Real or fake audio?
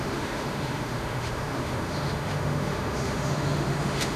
fake